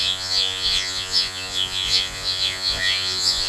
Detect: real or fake fake